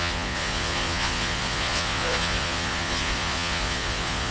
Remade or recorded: remade